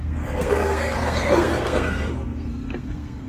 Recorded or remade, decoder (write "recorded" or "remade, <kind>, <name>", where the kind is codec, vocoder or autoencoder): remade, codec, SNAC